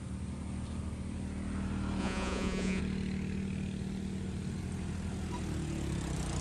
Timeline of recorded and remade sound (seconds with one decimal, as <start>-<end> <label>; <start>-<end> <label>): 0.0-2.0 recorded; 2.0-2.8 remade; 2.8-6.4 recorded